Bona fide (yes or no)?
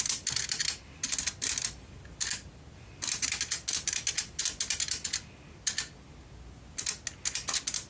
yes